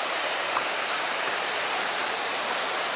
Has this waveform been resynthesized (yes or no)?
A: yes